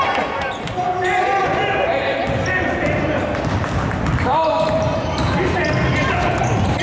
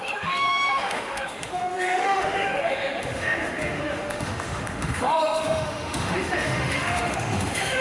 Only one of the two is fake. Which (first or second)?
second